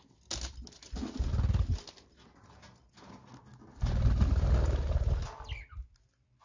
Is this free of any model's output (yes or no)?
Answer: yes